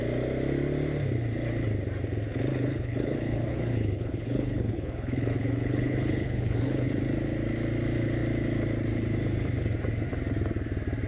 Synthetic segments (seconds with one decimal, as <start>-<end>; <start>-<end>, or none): 2.5-7.0